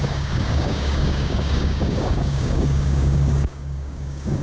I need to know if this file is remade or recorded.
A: remade